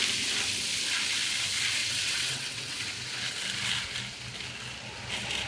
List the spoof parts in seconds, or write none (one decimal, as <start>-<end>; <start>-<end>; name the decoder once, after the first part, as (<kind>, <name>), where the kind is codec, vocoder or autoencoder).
1.8-2.8 (vocoder, WaveNeXt)